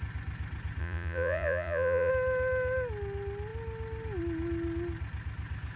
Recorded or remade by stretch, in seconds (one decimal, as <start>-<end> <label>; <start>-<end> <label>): 0.0-0.8 recorded; 0.8-2.1 remade; 2.1-5.8 recorded